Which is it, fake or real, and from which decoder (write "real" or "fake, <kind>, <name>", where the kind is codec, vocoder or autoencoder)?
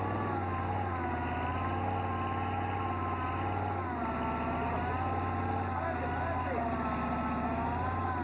real